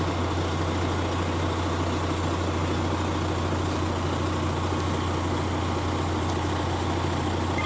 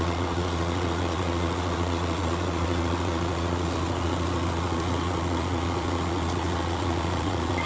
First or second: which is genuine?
first